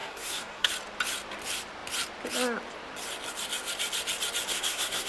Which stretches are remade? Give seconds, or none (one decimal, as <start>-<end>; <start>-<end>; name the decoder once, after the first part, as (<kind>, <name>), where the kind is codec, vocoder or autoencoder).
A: 0.0-0.7 (codec, SNAC); 4.5-5.1